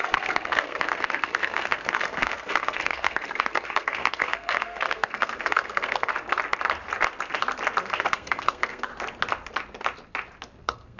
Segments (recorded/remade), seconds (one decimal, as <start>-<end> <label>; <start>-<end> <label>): 0.0-6.1 remade; 6.1-7.8 recorded; 7.8-8.9 remade; 8.9-10.6 recorded; 10.6-11.0 remade